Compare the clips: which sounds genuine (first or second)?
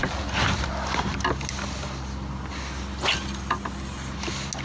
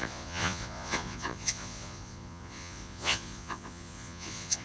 first